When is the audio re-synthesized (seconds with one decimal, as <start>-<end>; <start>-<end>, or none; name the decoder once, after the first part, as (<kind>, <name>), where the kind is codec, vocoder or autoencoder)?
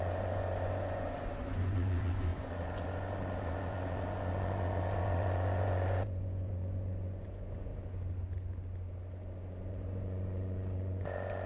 0.0-7.7 (vocoder, Vocos); 9.7-11.5